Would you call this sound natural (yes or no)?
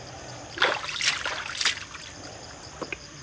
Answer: yes